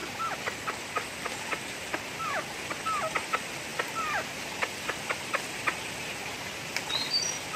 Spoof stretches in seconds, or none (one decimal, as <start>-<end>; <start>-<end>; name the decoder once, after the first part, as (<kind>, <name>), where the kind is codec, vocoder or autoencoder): none